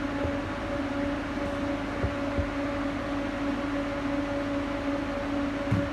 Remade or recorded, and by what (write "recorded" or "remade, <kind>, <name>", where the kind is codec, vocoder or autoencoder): recorded